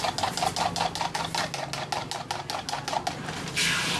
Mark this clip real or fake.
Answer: real